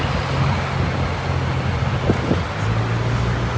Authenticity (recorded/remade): recorded